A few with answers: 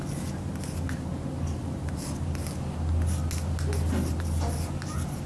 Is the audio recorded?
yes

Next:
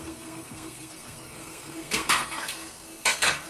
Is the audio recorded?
no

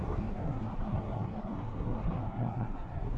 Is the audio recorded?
no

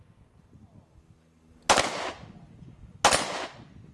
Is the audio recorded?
yes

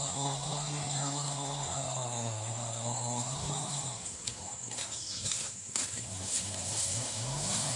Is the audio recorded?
no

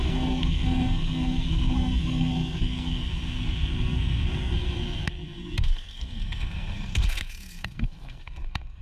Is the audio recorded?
no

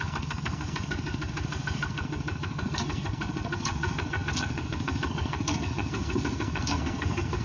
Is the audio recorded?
no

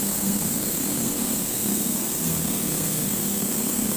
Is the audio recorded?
no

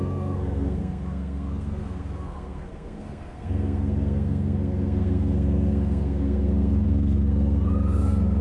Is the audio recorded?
no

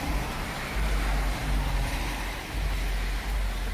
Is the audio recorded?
yes